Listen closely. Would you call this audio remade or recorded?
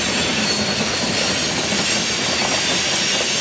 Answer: recorded